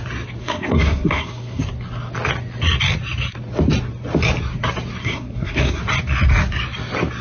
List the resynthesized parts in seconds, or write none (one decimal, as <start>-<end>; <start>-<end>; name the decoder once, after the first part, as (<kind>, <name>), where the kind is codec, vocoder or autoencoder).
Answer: 0.4-1.6 (codec, SNAC); 5.0-5.8